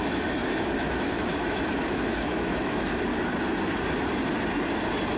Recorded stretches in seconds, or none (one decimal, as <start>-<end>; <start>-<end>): 3.1-5.2